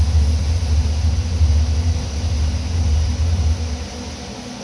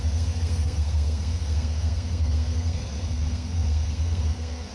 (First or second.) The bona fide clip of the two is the first